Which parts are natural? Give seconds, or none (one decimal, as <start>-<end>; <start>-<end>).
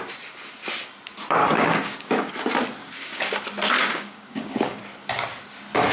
0.0-1.4; 2.3-2.8; 3.3-3.8; 4.8-5.9